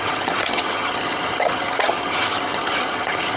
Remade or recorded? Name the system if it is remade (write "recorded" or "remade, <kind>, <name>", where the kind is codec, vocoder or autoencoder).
remade, vocoder, HiFi-GAN